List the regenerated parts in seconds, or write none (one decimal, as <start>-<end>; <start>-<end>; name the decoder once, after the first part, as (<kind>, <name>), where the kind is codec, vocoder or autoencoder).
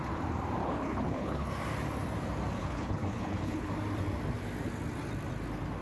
0.6-1.5 (codec, HILCodec); 2.6-3.7